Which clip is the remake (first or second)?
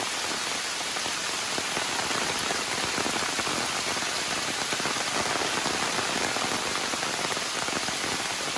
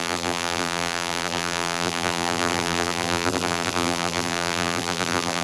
second